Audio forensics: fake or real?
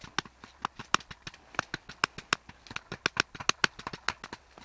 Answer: real